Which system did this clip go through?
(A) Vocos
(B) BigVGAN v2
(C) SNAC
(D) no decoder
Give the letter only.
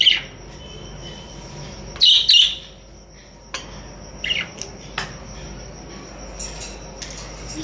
D